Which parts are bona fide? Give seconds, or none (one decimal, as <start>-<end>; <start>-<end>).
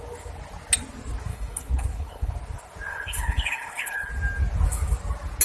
0.0-1.3; 2.3-2.9; 4.1-5.4